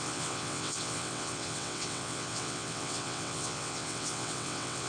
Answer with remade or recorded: remade